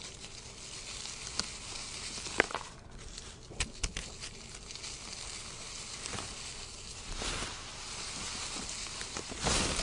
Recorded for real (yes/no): yes